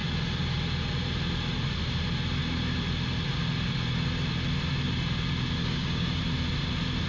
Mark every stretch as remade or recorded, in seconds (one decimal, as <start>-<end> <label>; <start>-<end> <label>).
0.0-5.6 recorded; 5.6-6.2 remade; 6.2-7.1 recorded